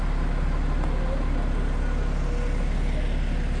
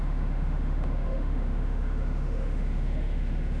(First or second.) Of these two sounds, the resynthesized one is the second